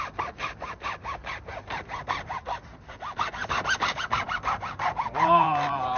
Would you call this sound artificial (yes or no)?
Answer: yes